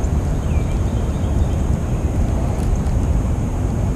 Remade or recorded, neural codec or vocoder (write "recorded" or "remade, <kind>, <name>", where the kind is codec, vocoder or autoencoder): remade, vocoder, BigVGAN v2